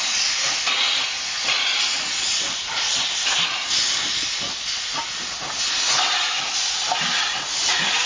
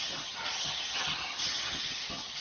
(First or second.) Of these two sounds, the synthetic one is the second